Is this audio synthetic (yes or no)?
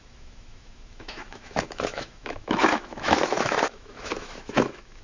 yes